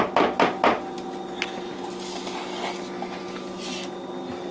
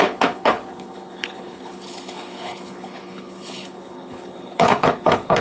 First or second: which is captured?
first